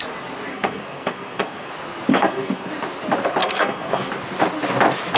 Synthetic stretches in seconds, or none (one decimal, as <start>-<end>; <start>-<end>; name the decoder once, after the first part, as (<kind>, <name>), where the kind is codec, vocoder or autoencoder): 0.5-1.7 (codec, SNAC); 2.1-2.7; 3.4-4.1

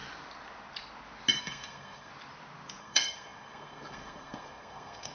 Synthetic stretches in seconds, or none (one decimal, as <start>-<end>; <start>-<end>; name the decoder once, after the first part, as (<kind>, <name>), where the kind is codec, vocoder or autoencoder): 1.4-2.1 (codec, SNAC); 2.8-5.1